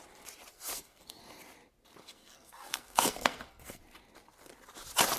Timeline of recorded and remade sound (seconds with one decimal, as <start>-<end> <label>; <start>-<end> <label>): 0.0-0.5 recorded; 0.5-1.2 remade; 1.2-2.0 recorded; 2.0-3.8 remade; 3.8-5.2 recorded